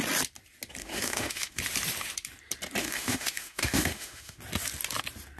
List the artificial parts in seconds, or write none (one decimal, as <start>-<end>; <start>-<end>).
0.8-1.6; 2.8-4.4